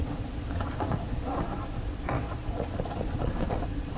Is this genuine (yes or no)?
no